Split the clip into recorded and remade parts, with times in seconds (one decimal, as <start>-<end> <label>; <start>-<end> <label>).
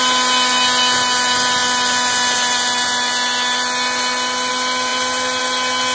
0.0-5.9 recorded